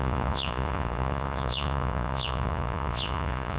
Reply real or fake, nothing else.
fake